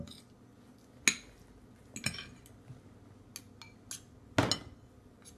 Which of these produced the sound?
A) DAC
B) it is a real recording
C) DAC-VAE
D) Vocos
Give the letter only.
B